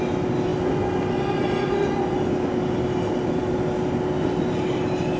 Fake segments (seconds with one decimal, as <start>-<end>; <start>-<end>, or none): none